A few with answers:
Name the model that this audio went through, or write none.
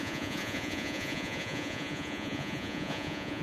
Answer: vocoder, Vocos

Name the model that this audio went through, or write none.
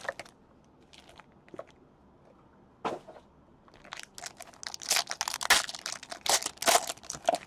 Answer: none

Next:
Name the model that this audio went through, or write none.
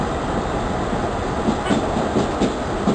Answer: none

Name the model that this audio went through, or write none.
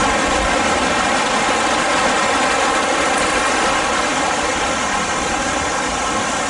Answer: vocoder, BigVGAN v2